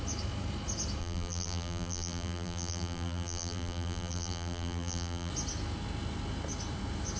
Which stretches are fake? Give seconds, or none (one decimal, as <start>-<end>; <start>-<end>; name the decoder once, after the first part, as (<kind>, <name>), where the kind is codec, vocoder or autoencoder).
1.0-5.3 (vocoder, BigVGAN v2)